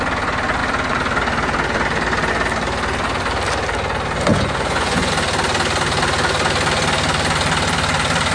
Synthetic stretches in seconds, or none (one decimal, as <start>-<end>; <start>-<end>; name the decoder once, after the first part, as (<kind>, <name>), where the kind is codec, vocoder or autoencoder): 4.3-5.1 (vocoder, Vocos)